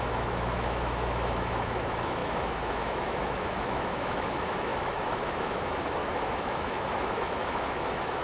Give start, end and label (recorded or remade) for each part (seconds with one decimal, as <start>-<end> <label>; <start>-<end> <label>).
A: 0.0-8.2 remade